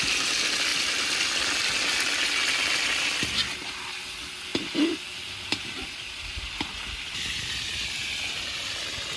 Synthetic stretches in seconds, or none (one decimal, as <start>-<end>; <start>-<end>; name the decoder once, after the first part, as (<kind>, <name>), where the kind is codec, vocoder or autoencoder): 0.7-1.6 (vocoder, BigVGAN v2); 4.5-6.7